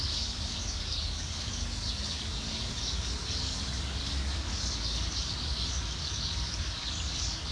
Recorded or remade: remade